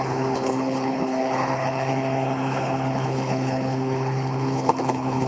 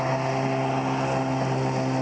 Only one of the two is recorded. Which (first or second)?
second